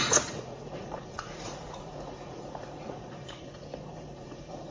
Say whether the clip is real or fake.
fake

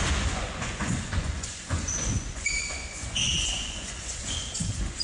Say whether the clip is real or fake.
fake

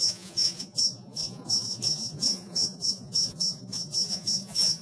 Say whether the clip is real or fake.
fake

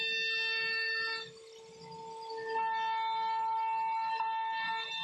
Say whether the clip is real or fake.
real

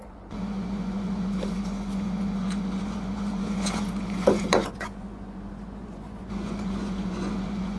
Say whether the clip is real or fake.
fake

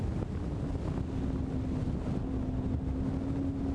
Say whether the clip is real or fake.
real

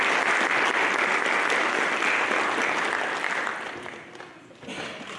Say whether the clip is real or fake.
real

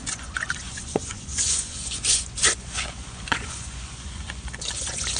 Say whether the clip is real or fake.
fake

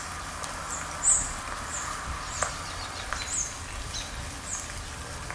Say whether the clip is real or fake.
real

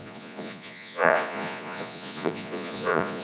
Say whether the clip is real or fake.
fake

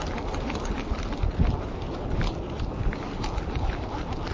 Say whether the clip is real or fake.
real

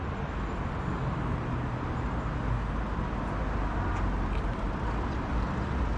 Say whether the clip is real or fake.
real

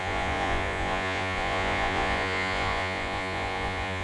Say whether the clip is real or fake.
fake